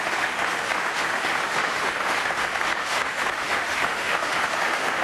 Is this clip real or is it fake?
fake